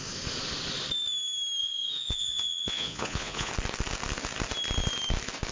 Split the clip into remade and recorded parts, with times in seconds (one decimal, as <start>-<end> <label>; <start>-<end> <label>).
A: 0.0-1.6 recorded; 1.6-3.5 remade; 3.5-5.5 recorded